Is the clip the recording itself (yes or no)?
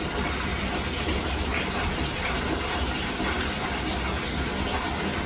yes